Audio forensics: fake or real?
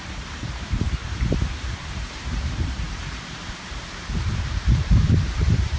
fake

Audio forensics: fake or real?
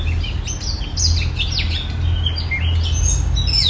real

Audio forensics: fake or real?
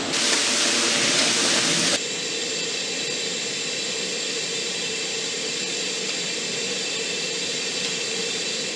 fake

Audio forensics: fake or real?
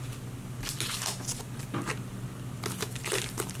real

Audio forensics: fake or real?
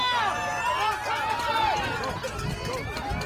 real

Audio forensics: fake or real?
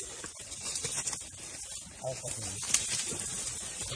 fake